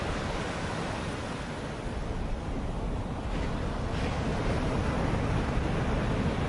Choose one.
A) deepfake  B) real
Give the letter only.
B